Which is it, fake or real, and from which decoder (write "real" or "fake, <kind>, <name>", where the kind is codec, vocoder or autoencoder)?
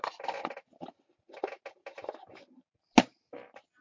real